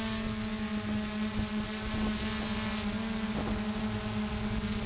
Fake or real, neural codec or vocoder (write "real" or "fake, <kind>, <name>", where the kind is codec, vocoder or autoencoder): real